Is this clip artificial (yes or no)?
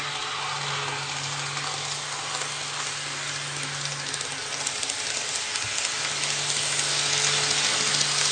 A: no